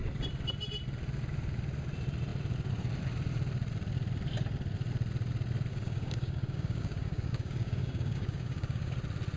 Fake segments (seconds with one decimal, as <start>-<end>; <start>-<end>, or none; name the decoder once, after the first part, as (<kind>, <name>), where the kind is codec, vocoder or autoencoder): 5.7-8.9 (codec, DAC)